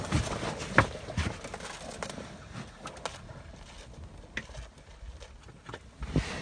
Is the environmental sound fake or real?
real